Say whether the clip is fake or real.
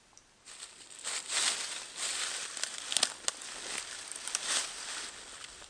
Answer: real